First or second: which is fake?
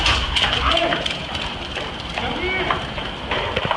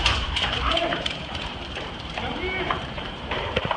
second